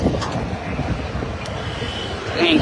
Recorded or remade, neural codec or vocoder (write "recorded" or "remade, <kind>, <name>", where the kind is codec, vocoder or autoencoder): recorded